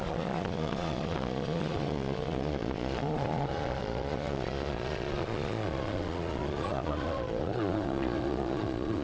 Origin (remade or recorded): remade